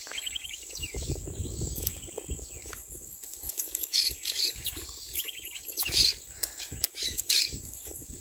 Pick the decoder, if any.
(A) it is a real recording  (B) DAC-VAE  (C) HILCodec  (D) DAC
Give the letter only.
D